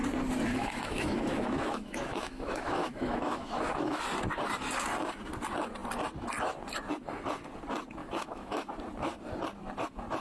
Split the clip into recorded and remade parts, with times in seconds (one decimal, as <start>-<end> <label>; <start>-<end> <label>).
0.0-0.5 recorded; 0.5-4.0 remade; 4.0-8.0 recorded; 8.0-8.7 remade; 8.7-10.2 recorded